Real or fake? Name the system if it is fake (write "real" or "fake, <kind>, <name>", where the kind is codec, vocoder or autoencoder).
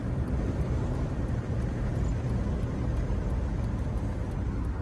real